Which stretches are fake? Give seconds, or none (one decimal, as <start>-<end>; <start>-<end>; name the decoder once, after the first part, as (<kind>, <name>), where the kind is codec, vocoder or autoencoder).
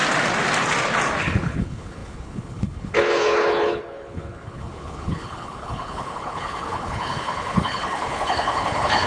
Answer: 1.2-9.1 (codec, HILCodec)